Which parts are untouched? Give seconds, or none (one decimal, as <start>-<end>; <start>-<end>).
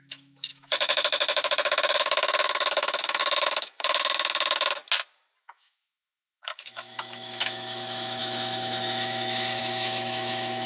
4.8-5.4